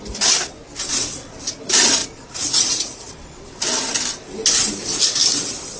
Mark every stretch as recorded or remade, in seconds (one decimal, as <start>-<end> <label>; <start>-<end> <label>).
0.0-2.0 recorded; 2.0-3.1 remade; 3.1-5.8 recorded